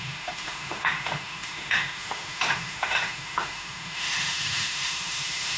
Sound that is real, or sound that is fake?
fake